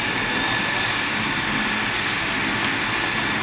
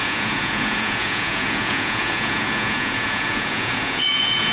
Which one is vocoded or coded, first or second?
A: second